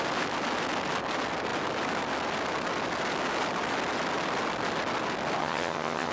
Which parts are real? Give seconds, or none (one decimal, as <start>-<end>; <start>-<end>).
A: 0.0-5.4